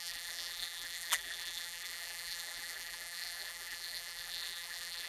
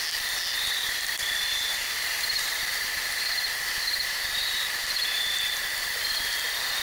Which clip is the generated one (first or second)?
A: first